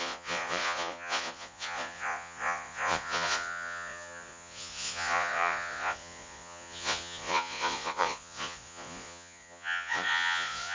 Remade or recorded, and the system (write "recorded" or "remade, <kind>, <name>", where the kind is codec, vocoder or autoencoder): remade, vocoder, Vocos